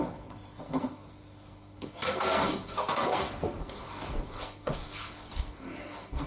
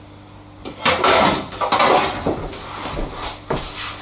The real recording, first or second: second